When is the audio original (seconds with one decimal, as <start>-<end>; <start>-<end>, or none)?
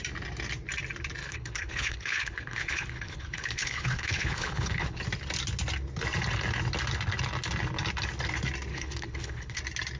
0.0-1.2; 5.0-8.7; 9.6-10.0